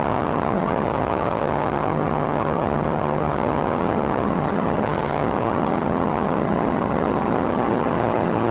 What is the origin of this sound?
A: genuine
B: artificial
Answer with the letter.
B